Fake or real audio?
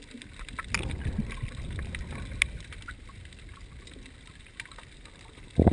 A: real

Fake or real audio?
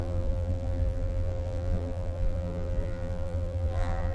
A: fake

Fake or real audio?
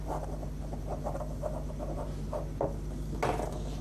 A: real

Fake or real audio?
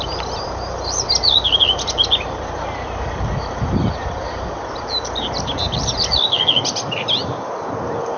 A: fake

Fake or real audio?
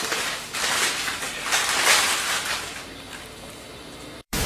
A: fake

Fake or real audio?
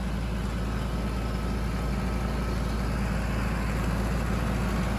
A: real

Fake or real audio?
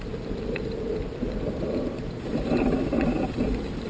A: fake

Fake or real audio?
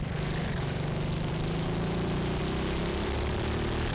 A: fake